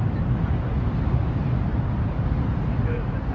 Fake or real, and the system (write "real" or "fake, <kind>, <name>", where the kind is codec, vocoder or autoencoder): real